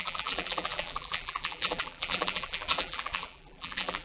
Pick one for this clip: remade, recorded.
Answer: remade